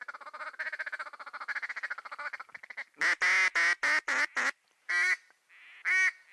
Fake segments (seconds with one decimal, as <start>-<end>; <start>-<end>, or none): none